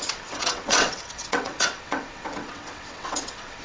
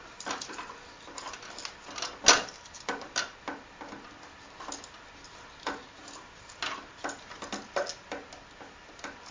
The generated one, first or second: first